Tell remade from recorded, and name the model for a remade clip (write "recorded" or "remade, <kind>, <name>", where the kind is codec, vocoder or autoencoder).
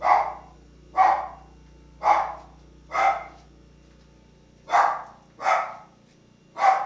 recorded